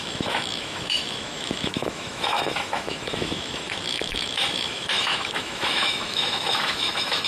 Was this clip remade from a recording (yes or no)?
yes